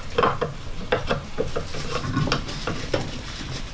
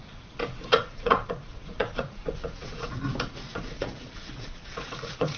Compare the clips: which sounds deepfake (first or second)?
second